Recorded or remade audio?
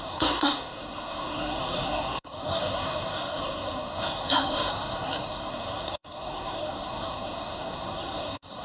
remade